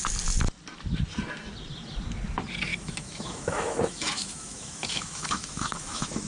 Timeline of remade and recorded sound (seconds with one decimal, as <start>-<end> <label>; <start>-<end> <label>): 0.0-2.7 recorded; 2.7-6.3 remade